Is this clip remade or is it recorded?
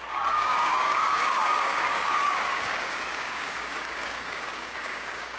remade